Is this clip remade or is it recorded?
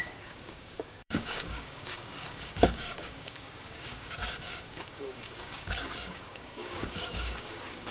remade